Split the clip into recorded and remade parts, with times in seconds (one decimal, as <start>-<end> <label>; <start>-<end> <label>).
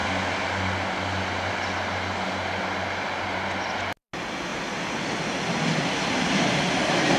0.0-7.2 recorded